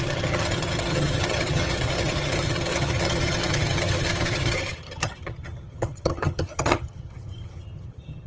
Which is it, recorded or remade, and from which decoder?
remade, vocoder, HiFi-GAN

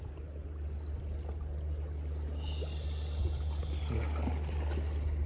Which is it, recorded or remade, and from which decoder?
recorded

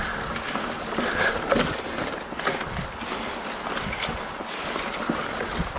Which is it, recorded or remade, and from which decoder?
recorded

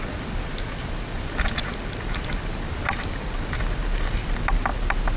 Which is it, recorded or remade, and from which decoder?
recorded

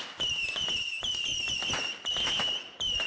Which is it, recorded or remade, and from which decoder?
recorded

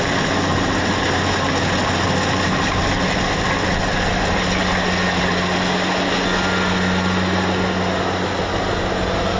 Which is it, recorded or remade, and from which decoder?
recorded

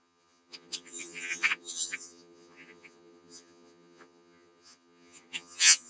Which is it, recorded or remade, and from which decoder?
remade, vocoder, HiFi-GAN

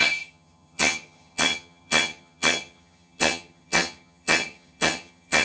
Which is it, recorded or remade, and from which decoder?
remade, vocoder, HiFi-GAN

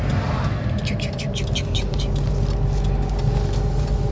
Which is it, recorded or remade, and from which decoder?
recorded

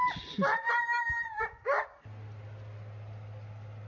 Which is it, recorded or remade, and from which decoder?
recorded